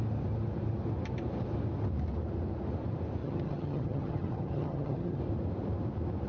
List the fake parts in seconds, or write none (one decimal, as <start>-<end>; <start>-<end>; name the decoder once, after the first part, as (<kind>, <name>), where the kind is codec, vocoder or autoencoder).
3.2-5.2 (vocoder, HiFi-GAN)

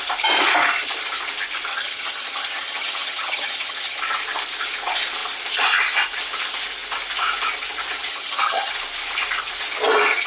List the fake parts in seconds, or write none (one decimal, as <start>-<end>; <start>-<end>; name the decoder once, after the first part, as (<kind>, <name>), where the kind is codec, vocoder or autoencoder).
1.7-4.0 (vocoder, HiFi-GAN); 8.1-8.7

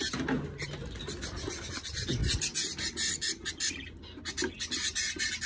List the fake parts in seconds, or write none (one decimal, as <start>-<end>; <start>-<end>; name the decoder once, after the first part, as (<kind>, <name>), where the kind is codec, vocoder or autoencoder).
none

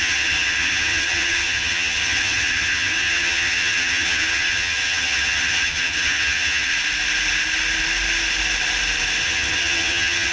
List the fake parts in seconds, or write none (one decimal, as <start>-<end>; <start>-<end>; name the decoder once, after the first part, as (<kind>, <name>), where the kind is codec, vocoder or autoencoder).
0.0-6.7 (vocoder, HiFi-GAN); 9.2-10.3